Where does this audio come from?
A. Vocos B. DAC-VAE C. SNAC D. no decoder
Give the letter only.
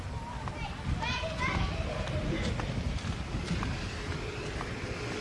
D